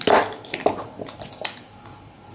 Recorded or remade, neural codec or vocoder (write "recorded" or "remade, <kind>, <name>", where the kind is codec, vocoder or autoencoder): recorded